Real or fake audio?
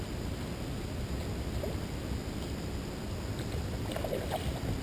real